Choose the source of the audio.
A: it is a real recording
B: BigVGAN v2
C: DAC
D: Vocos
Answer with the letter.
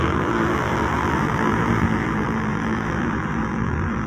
B